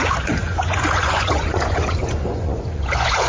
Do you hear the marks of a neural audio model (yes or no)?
yes